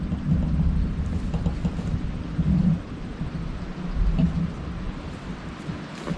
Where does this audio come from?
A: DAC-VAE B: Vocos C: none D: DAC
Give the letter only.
C